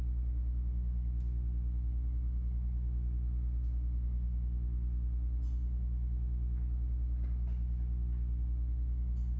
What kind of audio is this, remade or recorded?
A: recorded